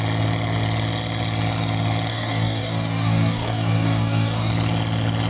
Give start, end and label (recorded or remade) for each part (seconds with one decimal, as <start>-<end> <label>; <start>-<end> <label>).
0.0-2.1 recorded; 2.1-4.5 remade; 4.5-5.3 recorded